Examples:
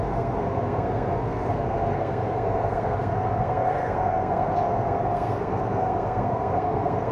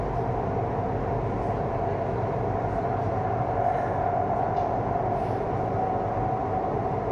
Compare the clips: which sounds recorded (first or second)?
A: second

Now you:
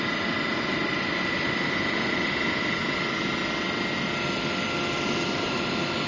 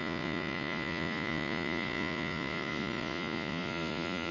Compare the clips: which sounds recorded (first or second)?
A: first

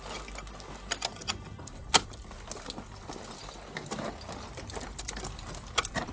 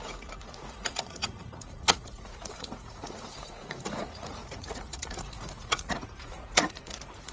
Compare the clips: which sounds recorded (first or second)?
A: first